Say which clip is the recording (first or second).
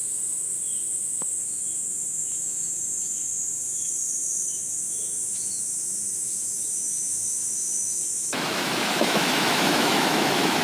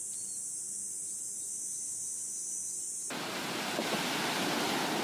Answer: second